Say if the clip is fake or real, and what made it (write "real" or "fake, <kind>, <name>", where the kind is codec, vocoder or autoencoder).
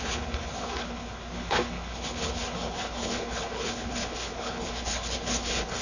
fake, codec, HILCodec